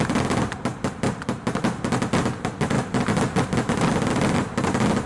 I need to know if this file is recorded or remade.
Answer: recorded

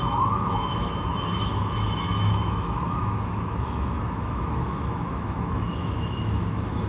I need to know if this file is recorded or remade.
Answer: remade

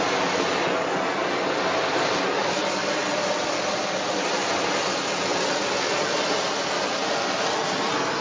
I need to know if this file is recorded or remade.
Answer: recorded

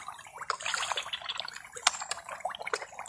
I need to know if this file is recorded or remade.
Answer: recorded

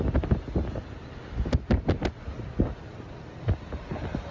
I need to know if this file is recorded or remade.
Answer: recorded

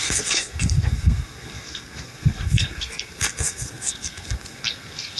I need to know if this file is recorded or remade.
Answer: remade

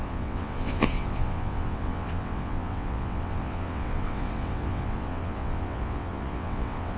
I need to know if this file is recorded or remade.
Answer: remade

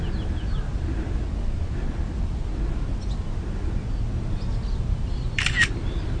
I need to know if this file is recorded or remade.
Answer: recorded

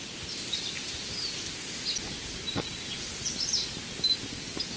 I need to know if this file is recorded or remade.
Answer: recorded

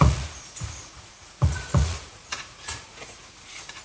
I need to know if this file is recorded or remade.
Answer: remade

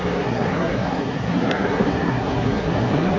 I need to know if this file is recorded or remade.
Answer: remade